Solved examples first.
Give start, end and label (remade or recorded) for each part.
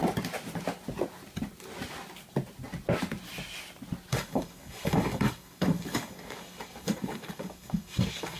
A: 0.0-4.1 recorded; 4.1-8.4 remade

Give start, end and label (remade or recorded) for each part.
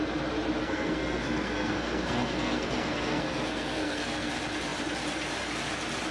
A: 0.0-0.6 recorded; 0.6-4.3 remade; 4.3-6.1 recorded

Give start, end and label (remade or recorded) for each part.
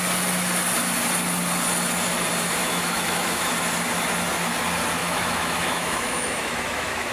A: 0.0-2.6 recorded; 2.6-3.5 remade; 3.5-5.0 recorded; 5.0-7.1 remade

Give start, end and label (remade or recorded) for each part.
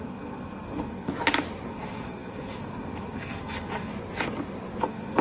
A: 0.0-1.1 remade; 1.1-1.7 recorded; 1.7-3.9 remade; 3.9-4.8 recorded; 4.8-5.2 remade